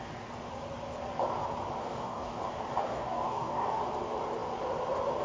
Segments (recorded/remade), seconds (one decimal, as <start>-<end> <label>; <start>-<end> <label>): 0.0-1.8 recorded; 1.8-2.4 remade; 2.4-2.8 recorded; 2.8-3.8 remade; 3.8-5.2 recorded